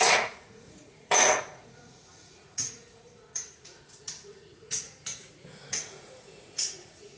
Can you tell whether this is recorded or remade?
remade